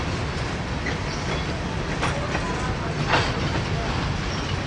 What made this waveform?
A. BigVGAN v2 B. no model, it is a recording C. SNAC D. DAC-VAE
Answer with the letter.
B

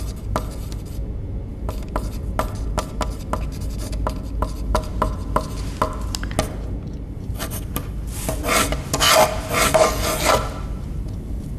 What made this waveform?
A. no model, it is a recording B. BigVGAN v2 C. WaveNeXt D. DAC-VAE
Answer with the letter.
A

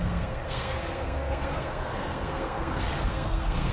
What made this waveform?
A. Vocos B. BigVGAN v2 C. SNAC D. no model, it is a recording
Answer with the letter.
C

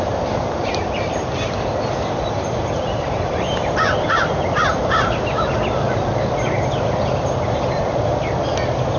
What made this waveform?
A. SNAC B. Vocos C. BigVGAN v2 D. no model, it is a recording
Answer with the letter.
C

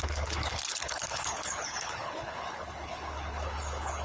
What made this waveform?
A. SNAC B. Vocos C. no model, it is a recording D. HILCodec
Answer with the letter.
D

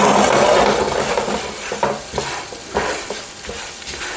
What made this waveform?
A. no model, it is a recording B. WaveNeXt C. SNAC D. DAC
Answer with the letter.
A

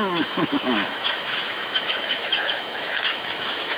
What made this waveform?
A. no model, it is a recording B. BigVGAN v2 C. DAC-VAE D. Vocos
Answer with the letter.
C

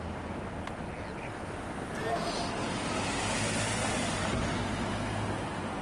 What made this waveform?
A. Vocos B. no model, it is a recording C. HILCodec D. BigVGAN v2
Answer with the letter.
B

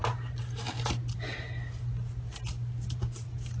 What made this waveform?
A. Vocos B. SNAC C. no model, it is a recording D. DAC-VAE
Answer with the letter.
C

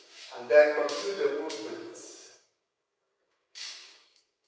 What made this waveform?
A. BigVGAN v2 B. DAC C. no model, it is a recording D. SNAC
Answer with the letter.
B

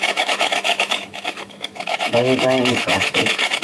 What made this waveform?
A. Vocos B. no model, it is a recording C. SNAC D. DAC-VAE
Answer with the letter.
D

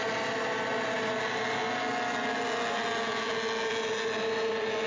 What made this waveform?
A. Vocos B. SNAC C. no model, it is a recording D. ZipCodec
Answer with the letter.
C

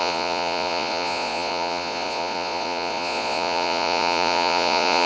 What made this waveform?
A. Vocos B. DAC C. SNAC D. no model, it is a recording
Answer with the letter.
A